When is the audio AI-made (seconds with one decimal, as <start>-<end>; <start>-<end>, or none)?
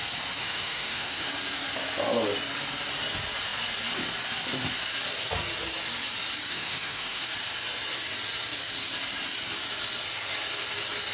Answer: 0.4-1.3; 6.5-7.2